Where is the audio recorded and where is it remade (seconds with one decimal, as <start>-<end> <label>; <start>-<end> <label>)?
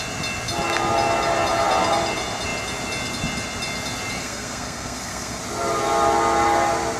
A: 0.0-4.2 recorded; 4.2-5.4 remade; 5.4-7.0 recorded